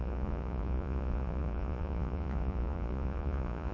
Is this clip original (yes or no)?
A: no